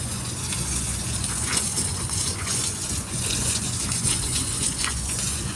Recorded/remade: remade